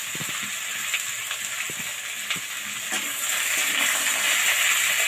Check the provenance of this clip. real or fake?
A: real